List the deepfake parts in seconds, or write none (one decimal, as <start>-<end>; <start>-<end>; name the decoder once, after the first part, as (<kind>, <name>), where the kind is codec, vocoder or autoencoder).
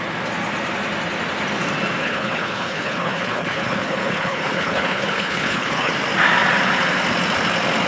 2.0-5.9 (codec, HILCodec)